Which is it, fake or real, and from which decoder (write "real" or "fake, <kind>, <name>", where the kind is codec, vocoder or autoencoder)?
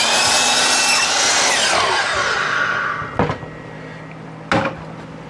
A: real